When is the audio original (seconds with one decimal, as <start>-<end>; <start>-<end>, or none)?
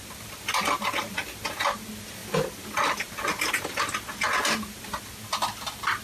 0.0-6.0